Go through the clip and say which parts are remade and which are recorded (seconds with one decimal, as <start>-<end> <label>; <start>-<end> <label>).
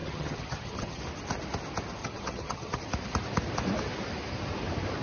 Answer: 0.0-1.0 remade; 1.0-2.0 recorded; 2.0-2.8 remade; 2.8-5.0 recorded